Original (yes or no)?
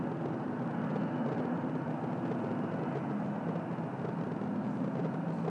yes